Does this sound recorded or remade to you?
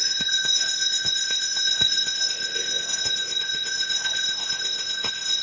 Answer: remade